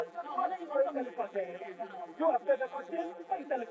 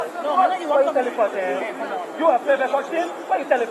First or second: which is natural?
second